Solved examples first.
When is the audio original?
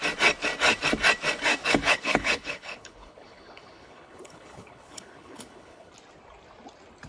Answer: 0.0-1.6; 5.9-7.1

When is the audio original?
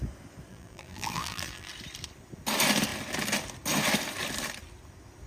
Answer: 0.0-0.5; 1.7-5.3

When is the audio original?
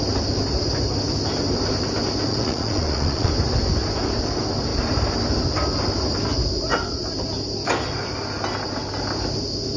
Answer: 0.0-2.3; 3.3-9.8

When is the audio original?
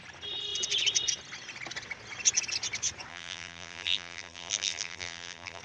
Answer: 0.0-3.1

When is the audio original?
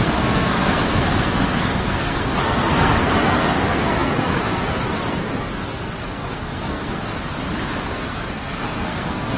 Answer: 7.3-7.9